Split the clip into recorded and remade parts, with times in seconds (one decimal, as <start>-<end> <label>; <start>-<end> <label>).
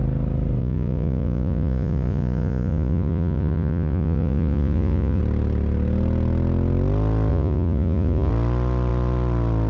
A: 0.0-0.6 recorded; 0.6-5.2 remade; 5.2-7.3 recorded; 7.3-8.3 remade; 8.3-9.7 recorded